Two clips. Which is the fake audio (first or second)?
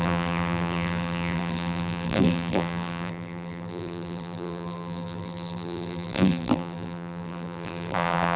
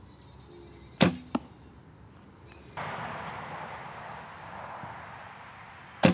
first